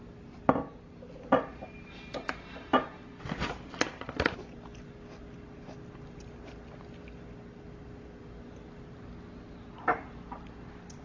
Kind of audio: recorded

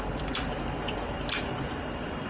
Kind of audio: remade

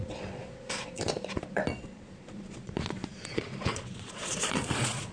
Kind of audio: remade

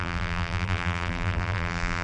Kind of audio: remade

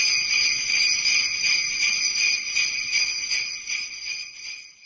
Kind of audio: remade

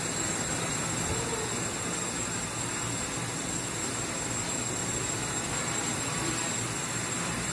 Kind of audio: recorded